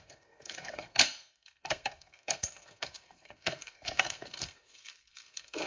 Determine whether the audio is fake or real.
fake